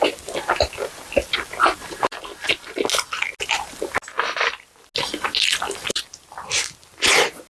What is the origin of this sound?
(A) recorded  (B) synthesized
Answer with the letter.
A